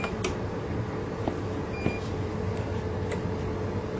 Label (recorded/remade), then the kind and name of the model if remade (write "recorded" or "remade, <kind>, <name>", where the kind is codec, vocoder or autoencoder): recorded